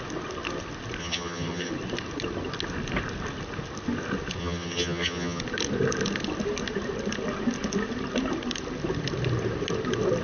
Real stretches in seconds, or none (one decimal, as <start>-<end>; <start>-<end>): 0.0-1.0; 1.7-4.4; 5.4-10.2